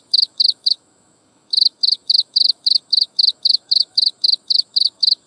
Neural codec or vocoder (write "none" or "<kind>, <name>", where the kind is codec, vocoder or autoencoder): autoencoder, DAC-VAE